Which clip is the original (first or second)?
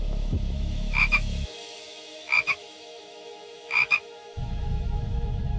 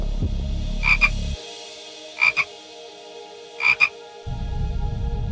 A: second